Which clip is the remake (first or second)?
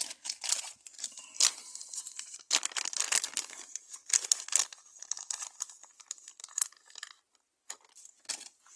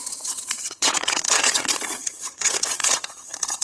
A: second